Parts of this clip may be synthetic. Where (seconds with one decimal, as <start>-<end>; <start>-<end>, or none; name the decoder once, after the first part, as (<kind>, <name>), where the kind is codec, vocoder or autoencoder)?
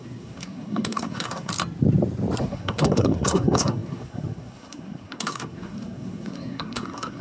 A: 0.0-1.5 (codec, SNAC); 2.4-7.2